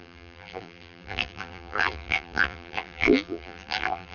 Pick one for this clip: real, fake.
fake